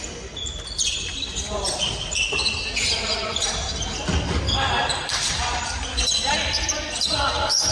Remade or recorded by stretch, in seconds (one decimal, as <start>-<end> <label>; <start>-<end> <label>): 0.0-4.8 recorded; 4.8-6.3 remade; 6.3-7.7 recorded

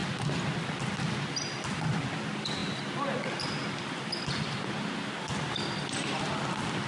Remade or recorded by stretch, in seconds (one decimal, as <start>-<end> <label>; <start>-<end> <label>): 0.0-6.9 recorded

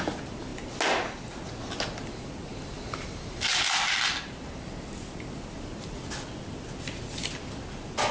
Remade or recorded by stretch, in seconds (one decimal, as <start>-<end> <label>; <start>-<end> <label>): 0.0-8.1 recorded

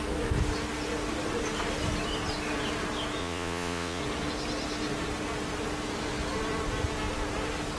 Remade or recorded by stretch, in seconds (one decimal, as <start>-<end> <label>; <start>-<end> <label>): 0.0-3.2 recorded; 3.2-4.0 remade; 4.0-7.8 recorded

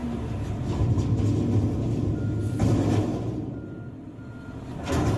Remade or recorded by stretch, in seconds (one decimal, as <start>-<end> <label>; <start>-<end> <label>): 0.0-5.2 recorded

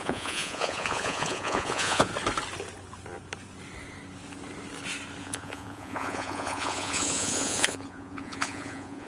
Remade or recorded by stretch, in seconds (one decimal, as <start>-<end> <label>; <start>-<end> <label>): 0.0-2.1 remade; 2.1-5.2 recorded; 5.2-9.1 remade